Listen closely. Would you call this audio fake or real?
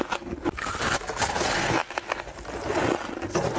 real